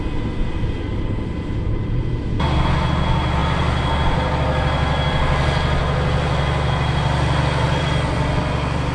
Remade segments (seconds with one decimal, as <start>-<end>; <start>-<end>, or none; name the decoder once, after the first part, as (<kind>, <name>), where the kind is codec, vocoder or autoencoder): 0.9-2.1 (vocoder, BigVGAN v2)